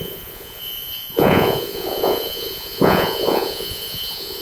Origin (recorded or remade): remade